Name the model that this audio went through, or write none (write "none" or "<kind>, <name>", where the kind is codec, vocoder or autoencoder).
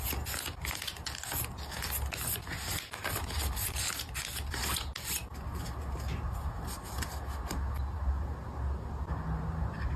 none